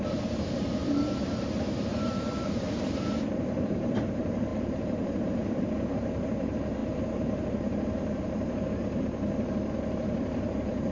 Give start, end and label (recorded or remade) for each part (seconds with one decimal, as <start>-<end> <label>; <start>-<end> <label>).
0.0-10.9 remade